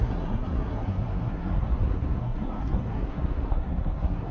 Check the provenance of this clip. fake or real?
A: fake